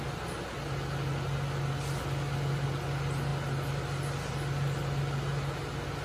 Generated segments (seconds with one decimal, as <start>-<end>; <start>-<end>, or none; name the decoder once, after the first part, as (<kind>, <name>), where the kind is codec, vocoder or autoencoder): none